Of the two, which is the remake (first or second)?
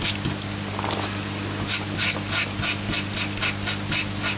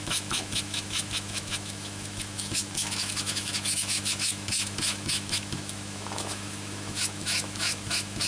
second